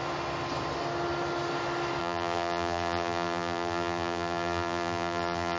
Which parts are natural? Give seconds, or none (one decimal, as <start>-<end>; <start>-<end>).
0.0-2.0